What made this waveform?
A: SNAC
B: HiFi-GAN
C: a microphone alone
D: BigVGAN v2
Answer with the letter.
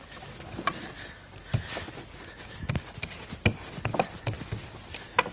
C